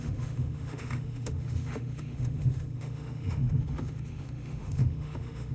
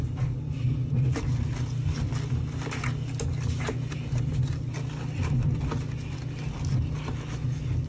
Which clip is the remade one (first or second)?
first